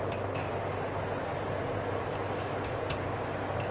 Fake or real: real